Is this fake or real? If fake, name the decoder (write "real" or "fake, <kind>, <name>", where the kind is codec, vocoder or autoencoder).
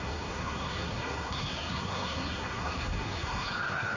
fake, codec, SNAC